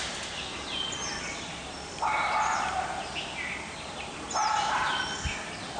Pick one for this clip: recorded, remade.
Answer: recorded